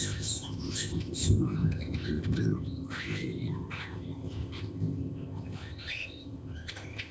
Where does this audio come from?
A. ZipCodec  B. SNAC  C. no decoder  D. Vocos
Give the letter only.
A